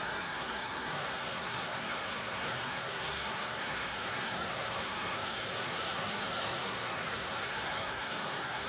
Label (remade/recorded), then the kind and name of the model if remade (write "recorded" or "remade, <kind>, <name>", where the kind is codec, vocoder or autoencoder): remade, codec, SNAC